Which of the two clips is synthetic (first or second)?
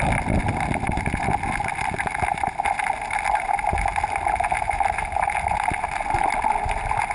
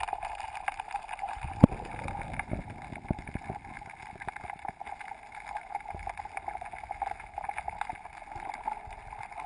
first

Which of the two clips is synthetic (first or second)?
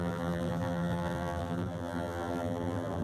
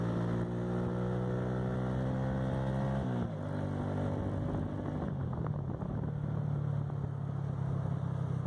first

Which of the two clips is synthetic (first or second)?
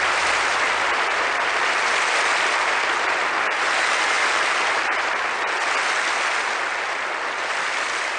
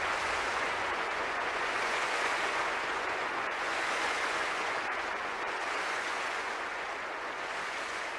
second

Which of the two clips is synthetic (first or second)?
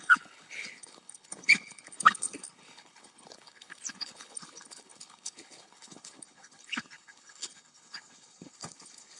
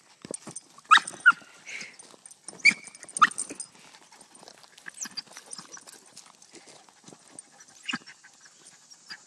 first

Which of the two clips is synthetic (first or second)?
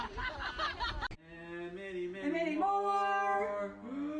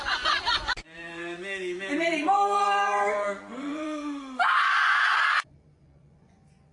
second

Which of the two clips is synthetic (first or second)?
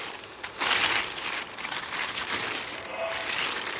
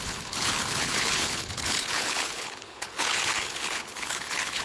second